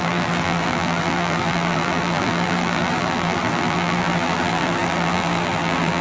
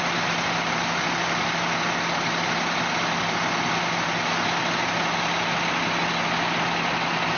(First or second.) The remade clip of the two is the first